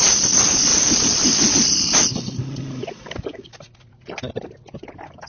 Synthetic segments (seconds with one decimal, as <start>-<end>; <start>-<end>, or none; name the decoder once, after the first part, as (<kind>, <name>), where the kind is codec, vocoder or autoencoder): none